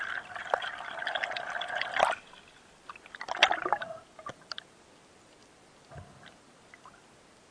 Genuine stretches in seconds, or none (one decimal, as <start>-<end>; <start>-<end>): 0.0-0.4; 2.7-7.5